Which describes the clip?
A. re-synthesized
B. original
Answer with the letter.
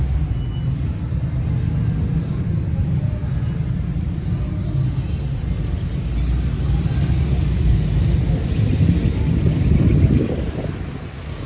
B